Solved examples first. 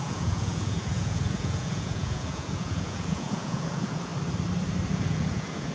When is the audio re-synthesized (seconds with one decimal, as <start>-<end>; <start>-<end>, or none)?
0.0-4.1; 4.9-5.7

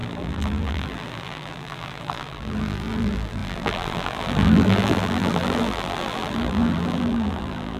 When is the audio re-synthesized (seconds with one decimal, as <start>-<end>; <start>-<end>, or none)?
0.0-7.8

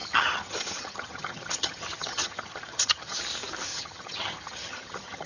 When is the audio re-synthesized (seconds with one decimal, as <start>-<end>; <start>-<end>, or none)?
0.0-3.2; 3.7-5.3